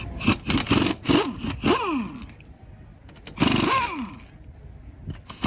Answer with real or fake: real